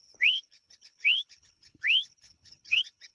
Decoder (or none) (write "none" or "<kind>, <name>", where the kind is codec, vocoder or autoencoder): codec, HILCodec